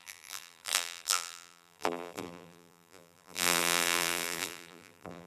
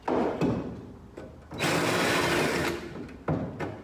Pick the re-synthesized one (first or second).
first